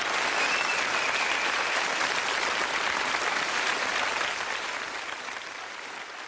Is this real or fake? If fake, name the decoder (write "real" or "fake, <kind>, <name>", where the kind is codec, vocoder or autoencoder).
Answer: real